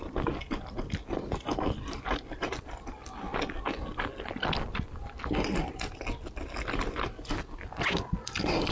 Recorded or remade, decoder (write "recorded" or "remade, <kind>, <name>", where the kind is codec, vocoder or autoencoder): recorded